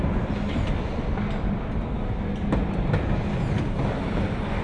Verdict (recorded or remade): recorded